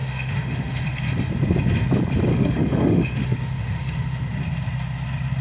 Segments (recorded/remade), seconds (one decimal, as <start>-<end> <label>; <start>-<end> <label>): 0.0-0.8 remade; 0.8-2.3 recorded; 2.3-4.3 remade; 4.3-5.4 recorded